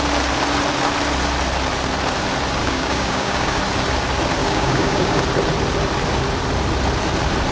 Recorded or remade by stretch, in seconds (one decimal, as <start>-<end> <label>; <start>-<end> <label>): 0.0-2.6 recorded; 2.6-3.6 remade; 3.6-4.4 recorded; 4.4-5.2 remade; 5.2-7.5 recorded